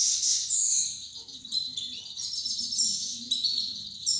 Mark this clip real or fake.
fake